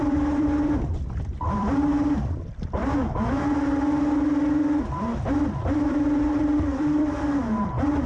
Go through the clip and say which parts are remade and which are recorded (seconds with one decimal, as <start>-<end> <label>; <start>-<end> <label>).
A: 0.0-2.8 remade; 2.8-4.0 recorded; 4.0-8.1 remade